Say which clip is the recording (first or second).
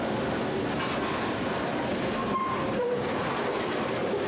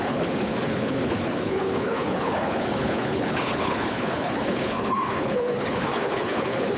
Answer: first